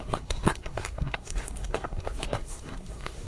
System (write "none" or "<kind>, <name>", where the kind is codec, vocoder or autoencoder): codec, SNAC